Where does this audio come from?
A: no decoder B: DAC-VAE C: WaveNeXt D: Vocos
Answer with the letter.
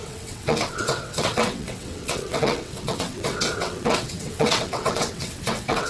C